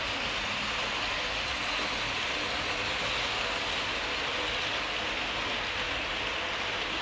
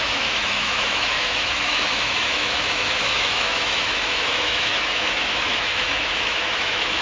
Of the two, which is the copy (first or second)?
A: second